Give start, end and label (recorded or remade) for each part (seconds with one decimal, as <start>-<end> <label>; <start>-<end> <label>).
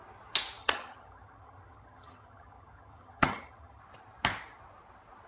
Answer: 0.0-0.6 recorded; 0.6-3.8 remade; 3.8-5.3 recorded